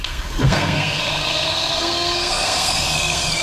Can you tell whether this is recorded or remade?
remade